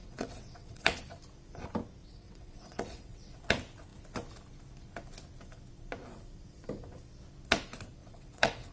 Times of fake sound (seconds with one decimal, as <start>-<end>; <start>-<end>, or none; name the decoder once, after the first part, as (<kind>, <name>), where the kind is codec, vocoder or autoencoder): 0.0-1.0 (vocoder, WaveNeXt); 2.0-3.4; 8.0-8.7